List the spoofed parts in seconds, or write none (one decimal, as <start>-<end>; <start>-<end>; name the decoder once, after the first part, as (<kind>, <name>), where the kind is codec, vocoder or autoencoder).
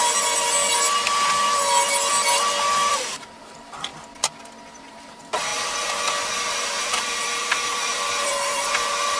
2.9-3.9 (vocoder, BigVGAN v2); 4.7-5.5; 6.5-9.2